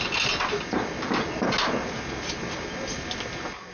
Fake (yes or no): no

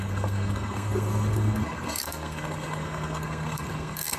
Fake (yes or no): yes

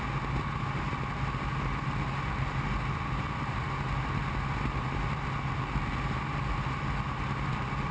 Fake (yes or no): no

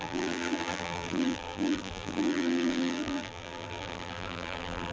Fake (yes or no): yes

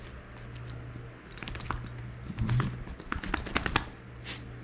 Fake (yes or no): no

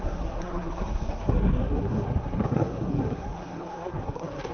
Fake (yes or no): yes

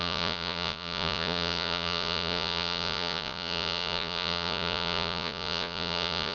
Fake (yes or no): yes